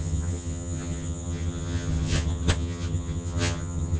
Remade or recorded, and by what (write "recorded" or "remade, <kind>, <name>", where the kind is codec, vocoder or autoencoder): remade, vocoder, HiFi-GAN